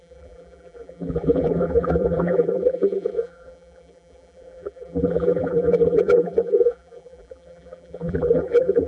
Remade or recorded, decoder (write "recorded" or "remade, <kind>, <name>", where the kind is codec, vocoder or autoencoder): remade, vocoder, BigVGAN v2